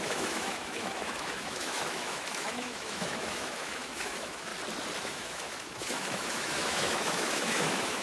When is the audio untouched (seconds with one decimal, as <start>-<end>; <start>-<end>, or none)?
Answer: 4.5-5.0